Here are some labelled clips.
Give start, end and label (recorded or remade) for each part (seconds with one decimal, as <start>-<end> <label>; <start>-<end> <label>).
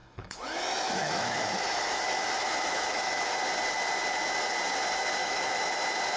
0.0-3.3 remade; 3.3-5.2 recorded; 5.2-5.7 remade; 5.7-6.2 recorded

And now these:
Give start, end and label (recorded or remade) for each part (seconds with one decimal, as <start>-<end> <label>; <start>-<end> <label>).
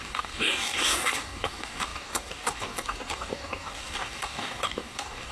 0.0-5.3 remade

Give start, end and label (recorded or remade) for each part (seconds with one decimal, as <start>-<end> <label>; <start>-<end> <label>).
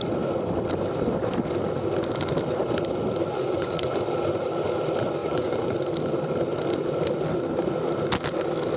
0.0-3.3 recorded; 3.3-3.9 remade; 3.9-5.2 recorded; 5.2-5.9 remade; 5.9-8.8 recorded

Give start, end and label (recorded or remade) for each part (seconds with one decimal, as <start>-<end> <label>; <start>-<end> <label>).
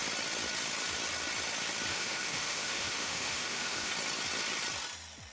0.0-1.9 recorded; 1.9-3.9 remade; 3.9-5.3 recorded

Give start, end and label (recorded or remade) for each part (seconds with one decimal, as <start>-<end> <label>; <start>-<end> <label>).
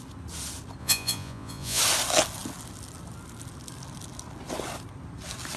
0.0-0.8 recorded; 0.8-1.8 remade; 1.8-5.6 recorded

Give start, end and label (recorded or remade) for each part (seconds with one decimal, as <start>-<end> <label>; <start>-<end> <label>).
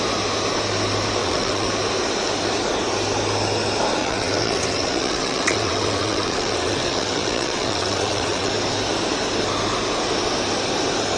0.0-1.2 recorded; 1.2-1.7 remade; 1.7-4.0 recorded; 4.0-8.5 remade; 8.5-11.2 recorded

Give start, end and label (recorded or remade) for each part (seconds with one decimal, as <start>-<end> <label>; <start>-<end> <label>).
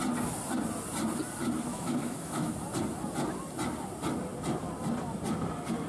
0.0-1.7 recorded; 1.7-2.5 remade; 2.5-5.9 recorded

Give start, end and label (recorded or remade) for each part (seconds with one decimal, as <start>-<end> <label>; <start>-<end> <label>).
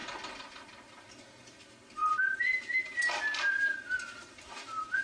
0.0-5.0 recorded